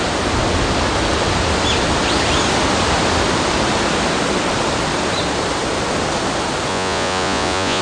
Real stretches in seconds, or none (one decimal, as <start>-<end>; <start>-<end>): 0.0-6.7